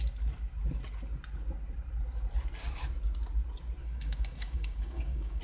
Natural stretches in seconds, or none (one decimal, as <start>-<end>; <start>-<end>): 0.0-3.8